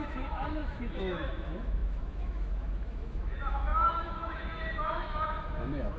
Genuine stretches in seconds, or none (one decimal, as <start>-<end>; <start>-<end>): none